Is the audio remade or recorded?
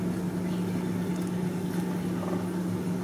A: recorded